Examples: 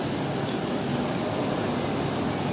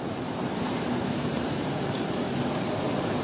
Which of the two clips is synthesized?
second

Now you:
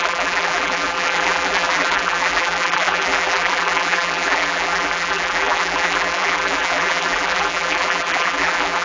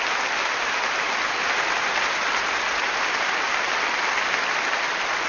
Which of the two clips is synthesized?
first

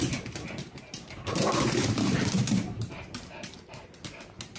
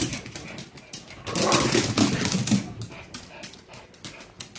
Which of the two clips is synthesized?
first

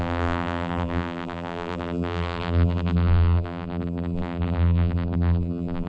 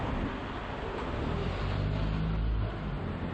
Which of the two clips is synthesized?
first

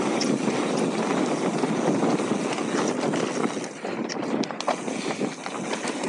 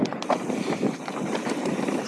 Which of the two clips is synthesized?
second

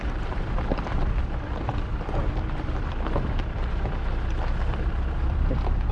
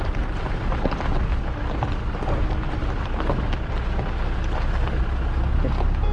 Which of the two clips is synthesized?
first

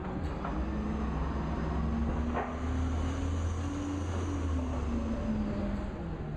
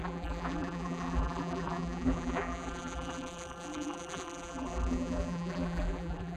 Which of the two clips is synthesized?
second